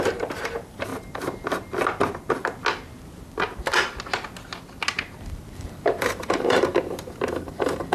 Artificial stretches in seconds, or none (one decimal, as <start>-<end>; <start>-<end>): 0.0-0.9; 5.6-6.7; 7.4-7.9